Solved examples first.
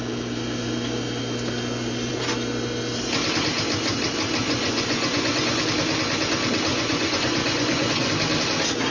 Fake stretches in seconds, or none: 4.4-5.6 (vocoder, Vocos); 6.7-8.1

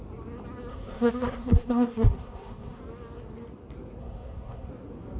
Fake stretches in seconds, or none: 0.7-2.8 (codec, SNAC); 4.0-4.7